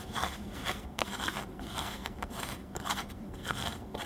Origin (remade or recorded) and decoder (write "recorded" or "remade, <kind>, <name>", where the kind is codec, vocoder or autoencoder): remade, codec, SNAC